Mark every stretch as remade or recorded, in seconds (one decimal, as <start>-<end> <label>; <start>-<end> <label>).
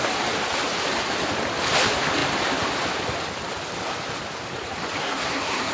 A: 0.0-5.0 recorded; 5.0-5.7 remade